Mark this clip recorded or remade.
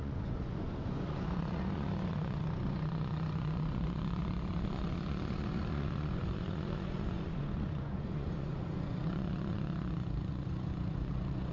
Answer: remade